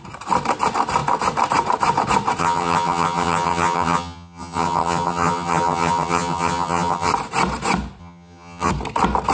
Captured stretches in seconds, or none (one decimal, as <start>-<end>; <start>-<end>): 0.0-2.4; 7.1-8.0; 8.7-9.3